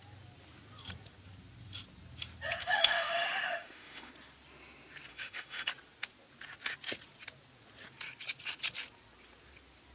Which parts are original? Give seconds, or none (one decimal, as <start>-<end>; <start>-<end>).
0.0-2.6; 4.1-5.1; 5.7-9.9